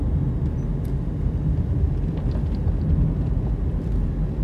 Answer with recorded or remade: recorded